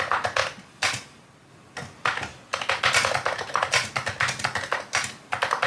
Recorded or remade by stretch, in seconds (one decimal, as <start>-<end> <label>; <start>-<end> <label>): 0.0-5.7 recorded